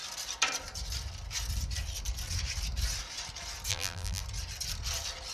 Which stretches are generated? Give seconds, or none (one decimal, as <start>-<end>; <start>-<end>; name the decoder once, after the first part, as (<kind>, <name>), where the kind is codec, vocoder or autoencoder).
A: 3.7-4.2 (vocoder, BigVGAN v2)